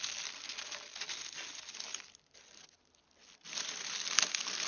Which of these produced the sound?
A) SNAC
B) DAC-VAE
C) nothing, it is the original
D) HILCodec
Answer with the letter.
C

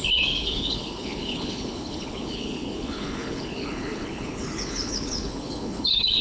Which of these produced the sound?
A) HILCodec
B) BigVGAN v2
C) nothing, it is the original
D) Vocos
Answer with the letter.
A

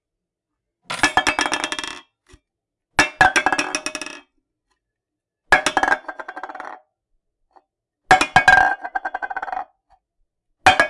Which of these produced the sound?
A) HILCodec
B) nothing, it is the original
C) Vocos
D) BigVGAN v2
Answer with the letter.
B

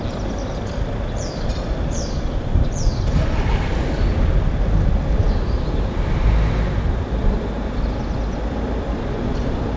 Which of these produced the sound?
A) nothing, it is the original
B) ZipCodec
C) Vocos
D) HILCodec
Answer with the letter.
A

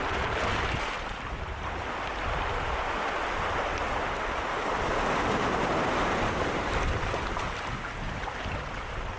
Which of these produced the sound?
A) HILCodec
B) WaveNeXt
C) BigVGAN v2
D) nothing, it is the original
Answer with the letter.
D